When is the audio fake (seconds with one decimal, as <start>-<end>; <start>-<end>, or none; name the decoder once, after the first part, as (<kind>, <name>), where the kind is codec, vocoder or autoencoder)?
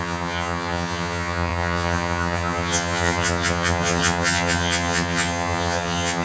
0.0-6.2 (vocoder, HiFi-GAN)